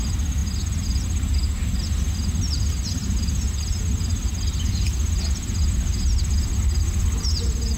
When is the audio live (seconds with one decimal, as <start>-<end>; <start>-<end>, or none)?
0.0-7.8